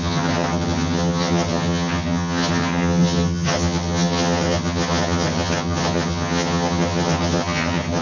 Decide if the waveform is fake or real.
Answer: fake